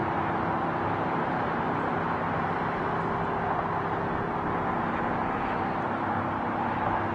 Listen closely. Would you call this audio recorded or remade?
recorded